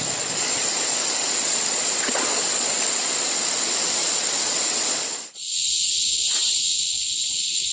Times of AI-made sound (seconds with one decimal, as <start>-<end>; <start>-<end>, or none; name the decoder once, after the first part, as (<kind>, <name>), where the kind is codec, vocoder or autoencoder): 0.0-7.7 (vocoder, Vocos)